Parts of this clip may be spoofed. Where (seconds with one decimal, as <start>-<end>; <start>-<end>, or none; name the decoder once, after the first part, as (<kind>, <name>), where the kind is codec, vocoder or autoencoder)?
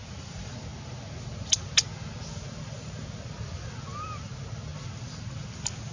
none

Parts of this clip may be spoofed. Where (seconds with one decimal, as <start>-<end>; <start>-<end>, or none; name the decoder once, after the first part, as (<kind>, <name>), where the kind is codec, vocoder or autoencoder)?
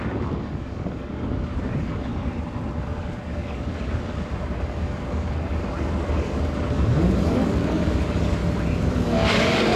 0.0-2.1 (codec, DAC); 2.8-8.4; 8.9-9.8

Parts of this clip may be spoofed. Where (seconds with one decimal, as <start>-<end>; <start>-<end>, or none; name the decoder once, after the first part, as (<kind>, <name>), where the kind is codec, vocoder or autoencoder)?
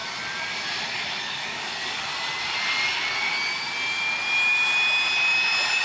1.1-2.1 (codec, DAC); 3.1-3.5